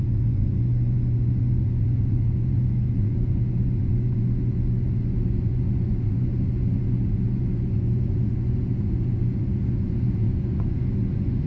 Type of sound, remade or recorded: remade